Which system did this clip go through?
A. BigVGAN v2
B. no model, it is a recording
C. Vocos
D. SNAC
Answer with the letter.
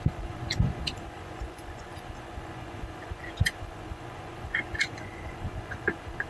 C